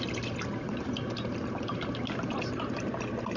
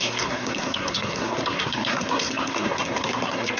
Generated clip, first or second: second